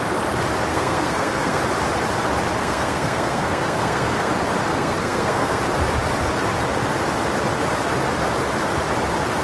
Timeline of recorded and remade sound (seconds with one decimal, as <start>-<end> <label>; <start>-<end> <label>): 0.0-0.7 recorded; 0.7-1.6 remade; 1.6-2.6 recorded; 2.6-4.3 remade; 4.3-4.7 recorded; 4.7-5.6 remade; 5.6-9.4 recorded